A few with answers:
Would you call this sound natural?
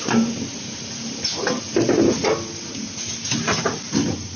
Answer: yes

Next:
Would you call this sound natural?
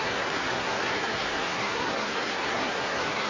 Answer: no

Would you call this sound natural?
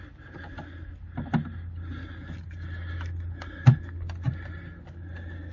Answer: yes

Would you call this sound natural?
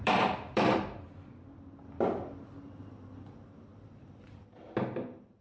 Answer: no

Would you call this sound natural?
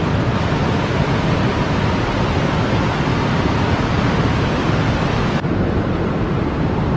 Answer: yes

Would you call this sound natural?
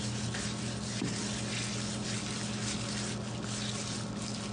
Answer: yes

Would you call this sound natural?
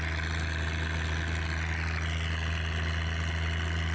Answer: yes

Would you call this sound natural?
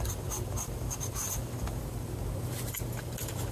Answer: yes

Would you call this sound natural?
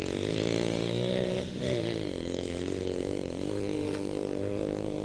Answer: no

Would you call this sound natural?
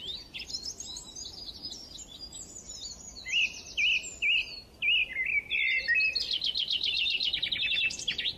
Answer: yes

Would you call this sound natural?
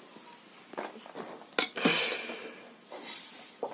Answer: yes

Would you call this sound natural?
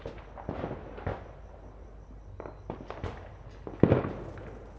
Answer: yes